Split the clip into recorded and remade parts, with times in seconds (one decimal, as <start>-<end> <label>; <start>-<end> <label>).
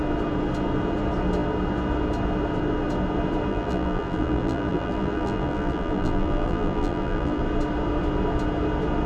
0.0-3.5 recorded; 3.5-7.4 remade; 7.4-9.1 recorded